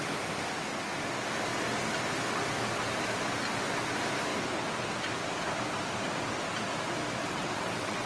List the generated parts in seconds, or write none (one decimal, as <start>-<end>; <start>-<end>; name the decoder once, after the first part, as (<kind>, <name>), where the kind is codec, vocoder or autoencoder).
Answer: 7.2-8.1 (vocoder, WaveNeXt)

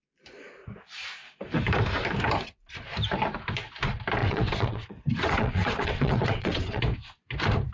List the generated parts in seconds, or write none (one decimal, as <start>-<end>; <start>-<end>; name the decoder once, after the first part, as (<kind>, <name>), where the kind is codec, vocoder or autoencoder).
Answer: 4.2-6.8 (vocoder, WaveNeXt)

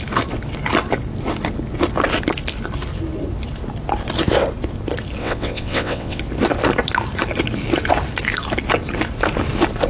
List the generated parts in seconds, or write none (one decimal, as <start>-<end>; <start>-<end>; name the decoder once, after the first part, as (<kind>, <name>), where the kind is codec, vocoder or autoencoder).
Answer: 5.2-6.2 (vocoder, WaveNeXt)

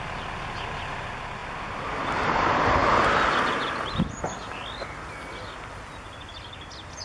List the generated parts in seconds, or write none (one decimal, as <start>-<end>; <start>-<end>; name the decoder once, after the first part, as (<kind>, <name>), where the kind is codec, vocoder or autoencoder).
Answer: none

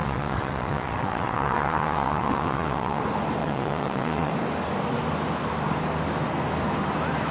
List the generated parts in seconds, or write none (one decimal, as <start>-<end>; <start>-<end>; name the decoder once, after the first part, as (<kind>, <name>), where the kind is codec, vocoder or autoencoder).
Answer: 0.0-3.0 (vocoder, WaveNeXt); 3.4-4.3

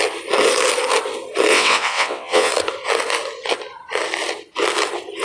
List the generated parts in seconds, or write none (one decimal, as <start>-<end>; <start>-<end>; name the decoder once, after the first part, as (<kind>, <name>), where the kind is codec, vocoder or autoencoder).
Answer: 1.5-2.5 (vocoder, WaveNeXt)

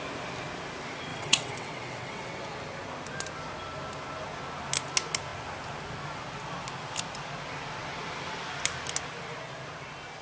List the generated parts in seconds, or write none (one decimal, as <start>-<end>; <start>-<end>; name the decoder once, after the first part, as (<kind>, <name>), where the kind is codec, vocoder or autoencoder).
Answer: 1.1-2.3 (vocoder, WaveNeXt)

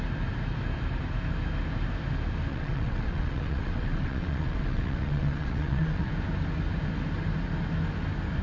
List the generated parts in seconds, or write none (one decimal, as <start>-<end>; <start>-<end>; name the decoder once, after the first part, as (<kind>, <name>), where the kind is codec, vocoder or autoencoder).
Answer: 2.5-6.1 (vocoder, WaveNeXt)